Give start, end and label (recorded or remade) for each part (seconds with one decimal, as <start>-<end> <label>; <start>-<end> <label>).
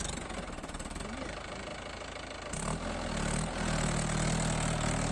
0.0-1.7 remade; 1.7-5.1 recorded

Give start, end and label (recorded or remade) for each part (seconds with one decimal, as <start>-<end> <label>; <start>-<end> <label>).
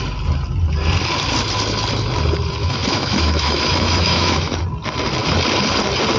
0.0-2.6 recorded; 2.6-4.6 remade; 4.6-6.2 recorded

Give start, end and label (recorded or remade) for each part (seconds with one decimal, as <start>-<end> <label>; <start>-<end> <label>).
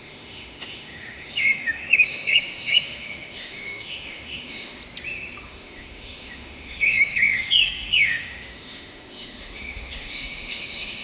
0.0-4.8 remade; 4.8-5.4 recorded; 5.4-11.0 remade